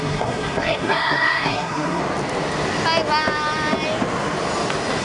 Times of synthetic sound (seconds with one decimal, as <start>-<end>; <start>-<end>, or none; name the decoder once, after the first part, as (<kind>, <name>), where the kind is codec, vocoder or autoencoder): 0.0-2.0 (codec, SNAC)